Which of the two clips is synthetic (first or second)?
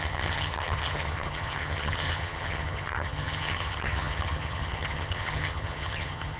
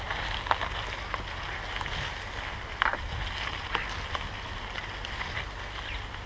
first